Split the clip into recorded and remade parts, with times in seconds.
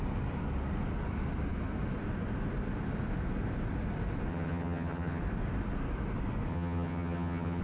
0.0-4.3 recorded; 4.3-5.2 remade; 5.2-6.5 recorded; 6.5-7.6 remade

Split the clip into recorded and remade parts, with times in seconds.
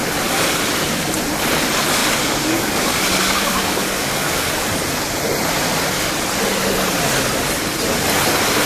0.0-2.0 recorded; 2.0-4.5 remade; 4.5-8.7 recorded